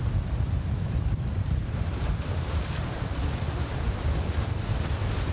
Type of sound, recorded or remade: remade